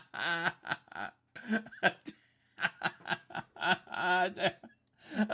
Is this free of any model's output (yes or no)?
yes